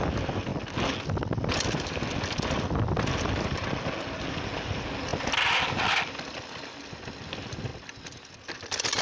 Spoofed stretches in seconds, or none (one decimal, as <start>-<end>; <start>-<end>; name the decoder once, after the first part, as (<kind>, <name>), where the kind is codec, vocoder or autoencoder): none